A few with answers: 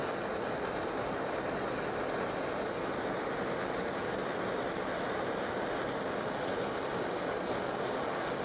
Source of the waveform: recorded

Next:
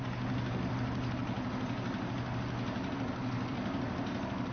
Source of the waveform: recorded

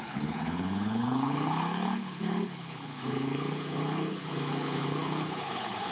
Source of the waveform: remade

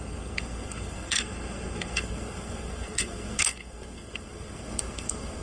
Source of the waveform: remade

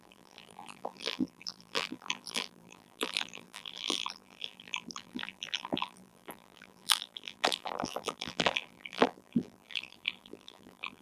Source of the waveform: remade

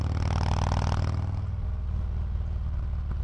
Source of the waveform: recorded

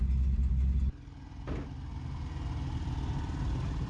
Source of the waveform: recorded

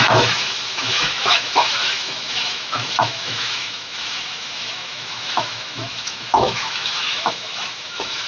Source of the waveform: remade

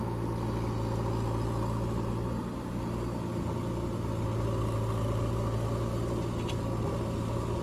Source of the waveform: recorded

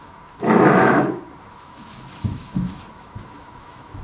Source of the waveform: remade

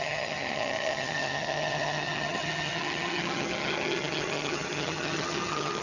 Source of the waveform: remade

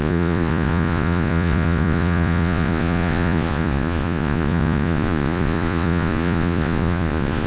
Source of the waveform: remade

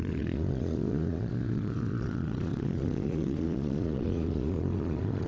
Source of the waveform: remade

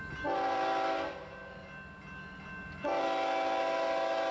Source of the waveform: recorded